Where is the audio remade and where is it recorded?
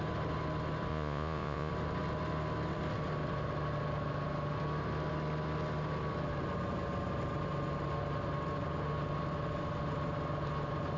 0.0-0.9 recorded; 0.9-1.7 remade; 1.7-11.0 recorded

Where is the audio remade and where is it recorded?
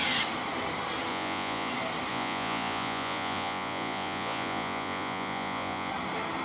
0.0-1.1 recorded; 1.1-1.7 remade; 1.7-2.1 recorded; 2.1-5.9 remade; 5.9-6.4 recorded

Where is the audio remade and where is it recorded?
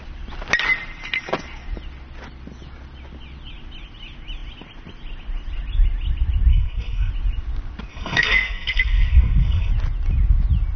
0.0-6.5 recorded; 6.5-7.1 remade; 7.1-7.9 recorded; 7.9-9.7 remade; 9.7-10.8 recorded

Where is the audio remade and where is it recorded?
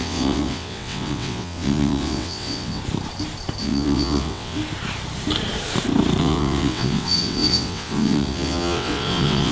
0.0-2.8 remade; 2.8-3.6 recorded; 3.6-4.6 remade; 4.6-6.2 recorded; 6.2-9.5 remade